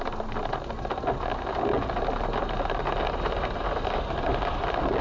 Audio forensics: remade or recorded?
recorded